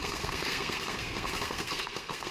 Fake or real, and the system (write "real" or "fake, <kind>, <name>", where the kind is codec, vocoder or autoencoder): fake, codec, SNAC